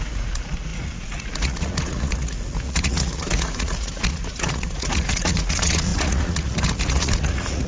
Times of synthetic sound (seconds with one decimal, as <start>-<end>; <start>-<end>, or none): 0.0-7.7